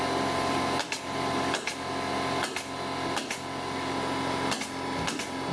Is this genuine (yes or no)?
yes